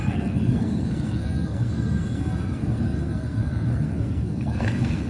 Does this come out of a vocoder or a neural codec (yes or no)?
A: yes